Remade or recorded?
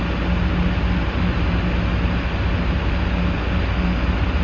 recorded